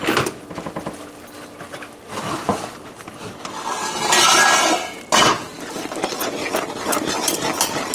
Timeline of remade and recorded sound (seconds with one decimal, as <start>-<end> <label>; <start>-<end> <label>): 0.0-7.9 recorded